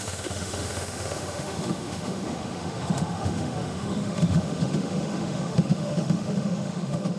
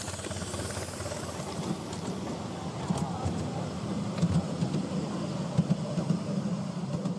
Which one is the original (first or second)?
second